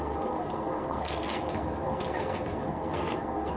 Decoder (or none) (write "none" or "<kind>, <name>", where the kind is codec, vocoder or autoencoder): codec, SNAC